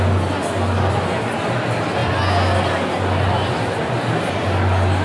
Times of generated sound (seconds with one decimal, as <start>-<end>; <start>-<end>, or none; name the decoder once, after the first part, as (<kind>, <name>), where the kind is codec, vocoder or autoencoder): none